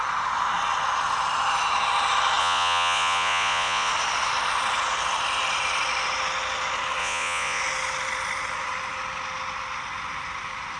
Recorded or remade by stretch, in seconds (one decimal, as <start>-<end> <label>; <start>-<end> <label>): 0.0-2.4 recorded; 2.4-3.9 remade; 3.9-7.0 recorded; 7.0-7.6 remade; 7.6-10.8 recorded